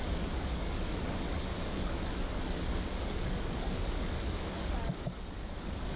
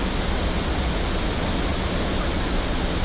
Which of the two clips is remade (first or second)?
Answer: first